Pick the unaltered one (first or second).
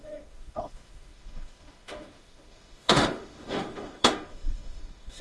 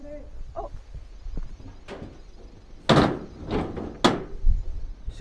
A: second